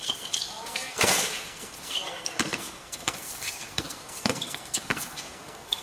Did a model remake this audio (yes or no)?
yes